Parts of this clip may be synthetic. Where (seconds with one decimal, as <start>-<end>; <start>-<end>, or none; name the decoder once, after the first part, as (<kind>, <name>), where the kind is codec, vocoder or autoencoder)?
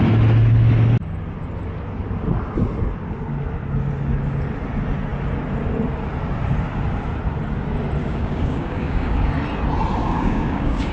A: 8.0-9.3 (codec, DAC); 10.0-10.9